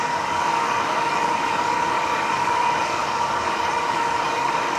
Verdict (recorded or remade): remade